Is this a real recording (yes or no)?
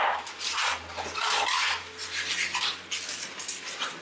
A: yes